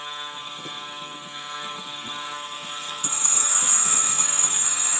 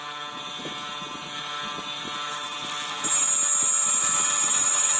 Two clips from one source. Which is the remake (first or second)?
first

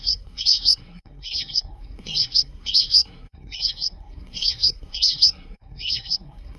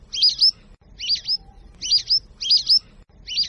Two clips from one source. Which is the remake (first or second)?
first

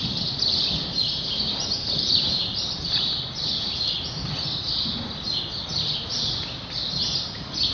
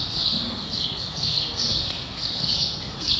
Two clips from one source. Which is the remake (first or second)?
second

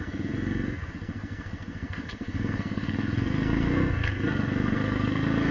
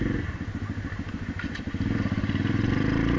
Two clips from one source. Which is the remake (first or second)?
first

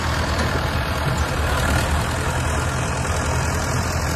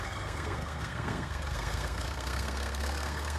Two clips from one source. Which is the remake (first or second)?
second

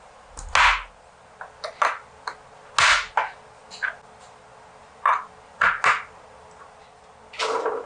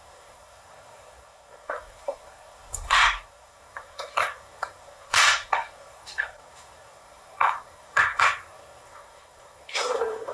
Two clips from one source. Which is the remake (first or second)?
second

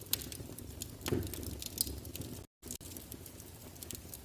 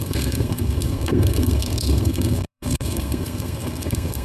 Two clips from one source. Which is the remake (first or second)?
second